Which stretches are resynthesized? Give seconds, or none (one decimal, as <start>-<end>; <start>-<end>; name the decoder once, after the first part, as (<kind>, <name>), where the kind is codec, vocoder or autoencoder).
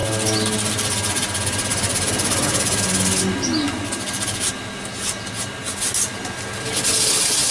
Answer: none